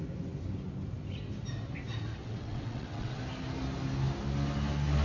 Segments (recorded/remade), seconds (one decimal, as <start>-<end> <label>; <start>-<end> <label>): 0.0-2.2 recorded; 2.2-3.2 remade; 3.2-5.0 recorded